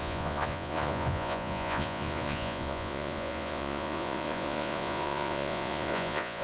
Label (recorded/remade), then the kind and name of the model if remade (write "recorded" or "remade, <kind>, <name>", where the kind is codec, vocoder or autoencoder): remade, vocoder, Vocos